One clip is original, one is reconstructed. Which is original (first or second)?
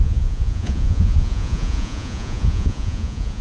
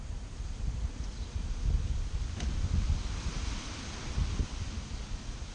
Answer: second